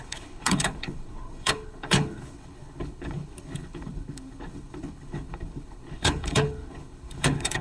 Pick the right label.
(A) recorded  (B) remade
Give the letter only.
B